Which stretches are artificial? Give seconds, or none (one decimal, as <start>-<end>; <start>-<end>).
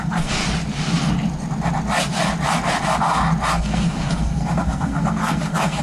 0.0-0.4; 3.5-5.8